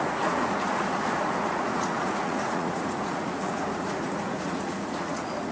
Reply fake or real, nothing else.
fake